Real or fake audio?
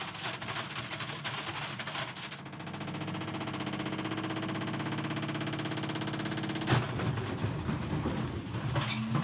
real